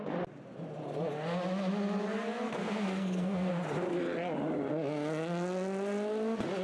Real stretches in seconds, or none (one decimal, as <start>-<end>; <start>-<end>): 0.0-2.6; 3.5-6.6